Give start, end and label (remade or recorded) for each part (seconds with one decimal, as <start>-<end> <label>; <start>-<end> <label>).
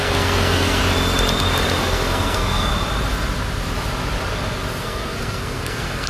0.0-0.8 remade; 0.8-1.8 recorded; 1.8-2.7 remade; 2.7-4.8 recorded; 4.8-6.1 remade